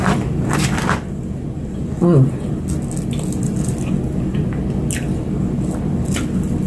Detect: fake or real real